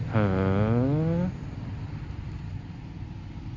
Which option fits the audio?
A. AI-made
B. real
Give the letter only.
B